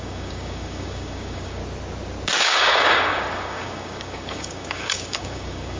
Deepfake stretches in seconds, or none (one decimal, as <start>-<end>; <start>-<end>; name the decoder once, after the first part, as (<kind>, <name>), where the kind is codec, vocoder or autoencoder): 0.0-1.6 (codec, DAC); 2.4-5.8